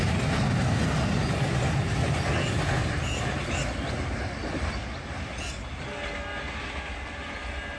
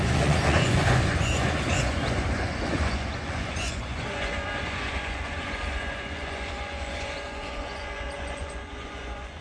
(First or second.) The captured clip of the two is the first